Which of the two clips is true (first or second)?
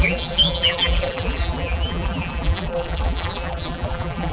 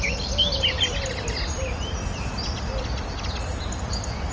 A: second